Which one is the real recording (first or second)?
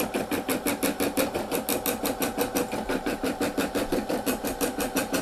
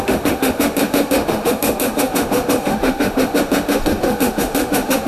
first